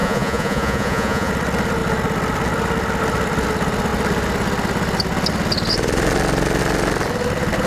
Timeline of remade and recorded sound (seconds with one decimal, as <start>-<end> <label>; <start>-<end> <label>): 0.0-1.3 remade; 1.3-7.7 recorded